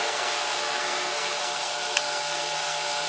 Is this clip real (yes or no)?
no